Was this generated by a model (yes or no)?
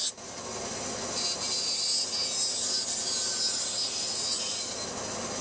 no